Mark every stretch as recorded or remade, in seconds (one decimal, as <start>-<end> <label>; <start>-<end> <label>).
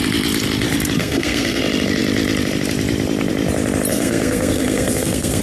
0.0-1.0 recorded; 1.0-1.6 remade; 1.6-3.9 recorded; 3.9-5.4 remade